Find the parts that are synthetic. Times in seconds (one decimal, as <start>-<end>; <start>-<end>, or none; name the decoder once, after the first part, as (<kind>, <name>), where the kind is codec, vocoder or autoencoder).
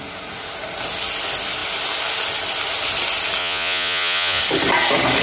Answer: 3.4-4.4 (vocoder, Vocos)